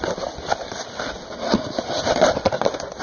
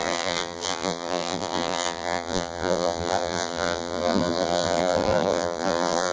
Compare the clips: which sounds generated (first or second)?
second